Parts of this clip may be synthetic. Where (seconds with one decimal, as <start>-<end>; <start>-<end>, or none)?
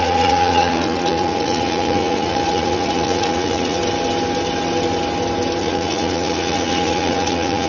0.0-3.8; 5.6-7.7